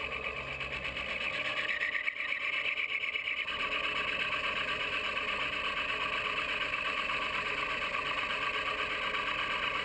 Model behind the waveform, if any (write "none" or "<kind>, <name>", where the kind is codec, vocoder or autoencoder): none